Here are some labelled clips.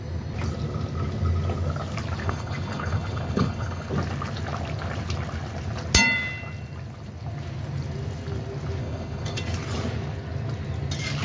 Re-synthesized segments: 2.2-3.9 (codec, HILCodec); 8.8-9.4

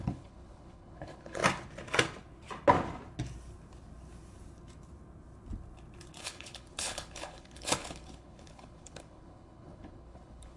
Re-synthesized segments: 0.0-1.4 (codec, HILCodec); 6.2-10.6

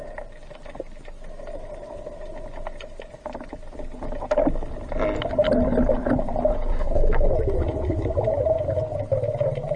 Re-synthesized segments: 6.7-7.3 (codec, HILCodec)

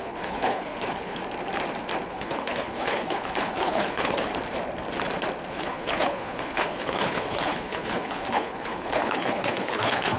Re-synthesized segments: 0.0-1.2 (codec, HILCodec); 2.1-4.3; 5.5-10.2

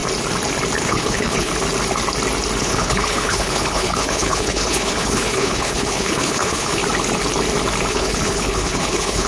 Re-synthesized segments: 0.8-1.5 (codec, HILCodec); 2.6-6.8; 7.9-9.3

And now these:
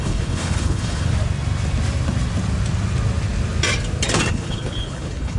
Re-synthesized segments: 0.0-1.1 (codec, HILCodec); 4.3-5.4

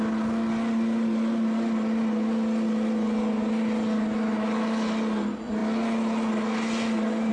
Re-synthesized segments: none

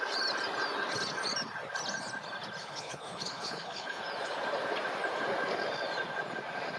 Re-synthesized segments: 2.6-4.0 (codec, HILCodec)